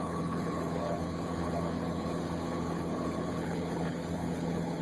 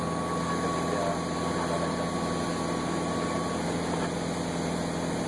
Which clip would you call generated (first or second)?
first